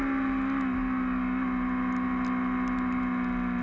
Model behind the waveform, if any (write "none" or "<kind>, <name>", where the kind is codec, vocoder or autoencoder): none